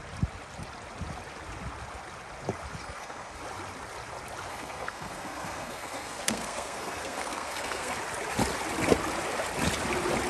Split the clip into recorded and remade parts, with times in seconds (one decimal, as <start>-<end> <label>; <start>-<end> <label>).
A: 0.0-2.8 recorded; 2.8-3.4 remade; 3.4-4.5 recorded; 4.5-8.0 remade; 8.0-10.3 recorded